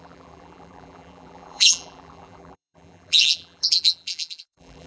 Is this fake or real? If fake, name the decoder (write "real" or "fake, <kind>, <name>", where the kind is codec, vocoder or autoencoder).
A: fake, vocoder, BigVGAN v2